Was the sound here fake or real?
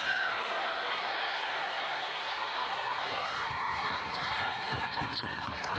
fake